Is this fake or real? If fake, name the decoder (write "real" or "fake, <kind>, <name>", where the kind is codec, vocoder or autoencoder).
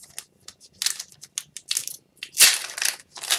real